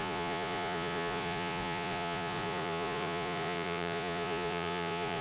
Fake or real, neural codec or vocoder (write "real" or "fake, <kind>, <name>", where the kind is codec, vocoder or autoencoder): fake, vocoder, Vocos